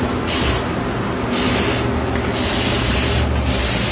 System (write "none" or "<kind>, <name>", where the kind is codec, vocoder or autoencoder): none